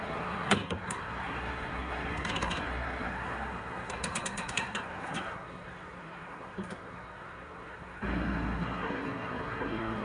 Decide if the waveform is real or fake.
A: fake